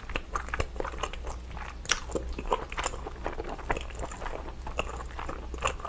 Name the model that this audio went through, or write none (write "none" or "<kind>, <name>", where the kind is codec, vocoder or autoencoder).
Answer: none